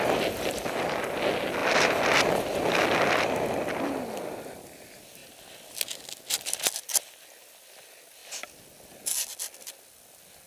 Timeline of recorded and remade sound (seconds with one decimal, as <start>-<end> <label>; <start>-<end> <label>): 0.0-10.5 recorded